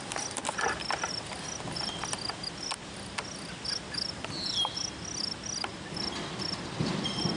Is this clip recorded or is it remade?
recorded